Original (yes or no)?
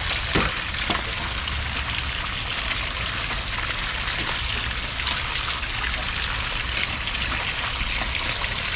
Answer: yes